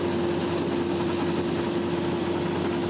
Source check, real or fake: real